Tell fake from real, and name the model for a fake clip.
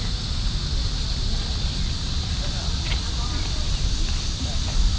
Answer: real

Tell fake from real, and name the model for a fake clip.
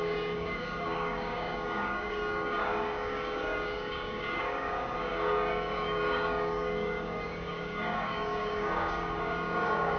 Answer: fake, codec, DAC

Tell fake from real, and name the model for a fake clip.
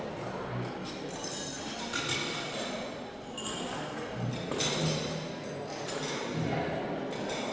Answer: real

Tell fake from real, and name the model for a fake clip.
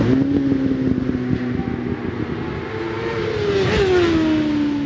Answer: real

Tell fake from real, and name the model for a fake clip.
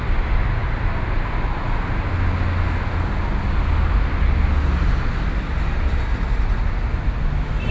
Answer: real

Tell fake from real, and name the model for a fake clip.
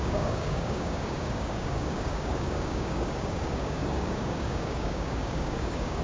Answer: fake, codec, DAC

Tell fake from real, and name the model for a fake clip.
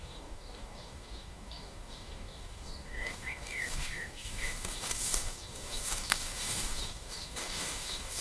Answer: fake, codec, DAC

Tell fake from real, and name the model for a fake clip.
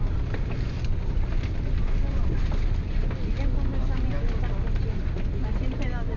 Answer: real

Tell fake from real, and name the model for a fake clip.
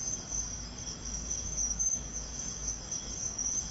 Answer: fake, codec, DAC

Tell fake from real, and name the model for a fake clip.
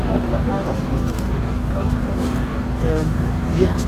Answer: fake, codec, DAC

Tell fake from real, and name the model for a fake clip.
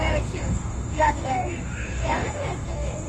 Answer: fake, codec, DAC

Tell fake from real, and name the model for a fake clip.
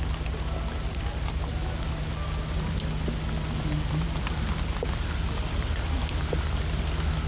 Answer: real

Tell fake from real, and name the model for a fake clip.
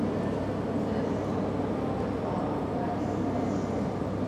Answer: real